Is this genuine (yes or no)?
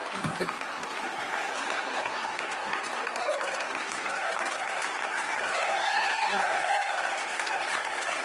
no